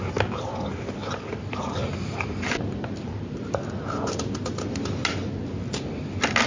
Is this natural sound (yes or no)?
yes